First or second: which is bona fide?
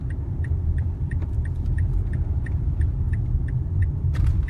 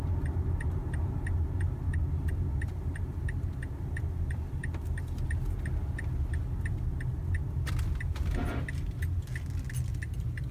second